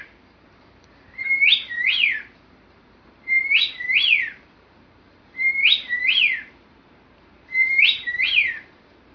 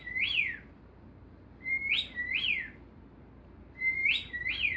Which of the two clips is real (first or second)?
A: second